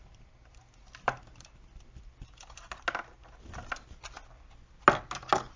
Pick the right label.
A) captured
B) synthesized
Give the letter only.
A